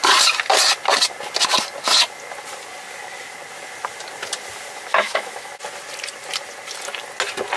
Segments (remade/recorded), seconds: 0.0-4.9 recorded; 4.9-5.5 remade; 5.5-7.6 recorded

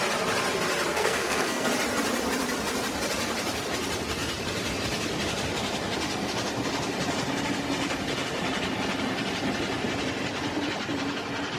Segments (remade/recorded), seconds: 0.0-0.9 recorded; 0.9-1.7 remade; 1.7-11.6 recorded

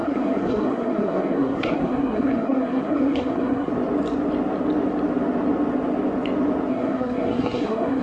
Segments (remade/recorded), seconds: 0.0-3.7 remade; 3.7-6.7 recorded; 6.7-8.0 remade

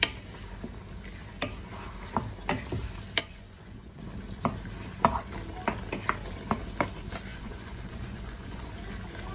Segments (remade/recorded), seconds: 0.0-3.2 recorded; 3.2-4.0 remade; 4.0-7.3 recorded; 7.3-8.7 remade; 8.7-9.3 recorded

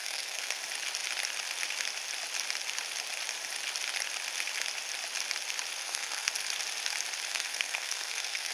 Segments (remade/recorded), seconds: 0.0-0.6 remade; 0.6-5.8 recorded; 5.8-6.3 remade; 6.3-7.3 recorded; 7.3-8.5 remade

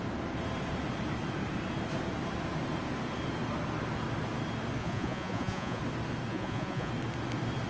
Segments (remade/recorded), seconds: 0.0-4.8 recorded; 4.8-5.8 remade; 5.8-6.3 recorded; 6.3-6.9 remade; 6.9-7.7 recorded

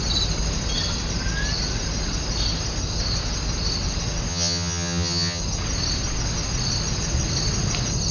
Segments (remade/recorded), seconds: 0.0-4.3 recorded; 4.3-5.4 remade; 5.4-8.1 recorded